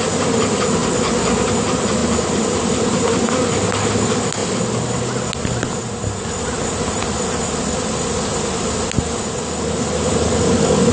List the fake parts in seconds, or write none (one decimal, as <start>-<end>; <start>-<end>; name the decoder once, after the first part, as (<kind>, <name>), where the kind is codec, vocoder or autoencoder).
none